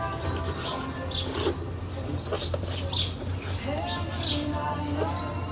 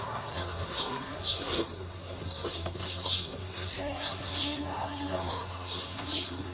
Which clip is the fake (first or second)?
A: second